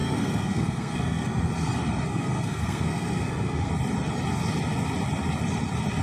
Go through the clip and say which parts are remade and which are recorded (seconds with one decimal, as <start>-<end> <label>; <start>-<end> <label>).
0.0-1.5 remade; 1.5-2.1 recorded; 2.1-3.7 remade; 3.7-6.0 recorded